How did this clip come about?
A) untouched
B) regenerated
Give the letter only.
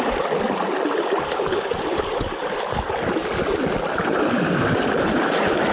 B